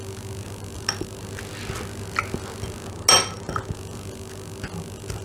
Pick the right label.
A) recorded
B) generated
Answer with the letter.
A